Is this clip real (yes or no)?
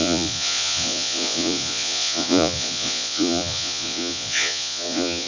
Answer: no